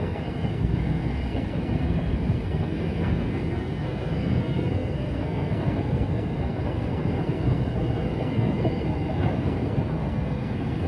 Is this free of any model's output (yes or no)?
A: no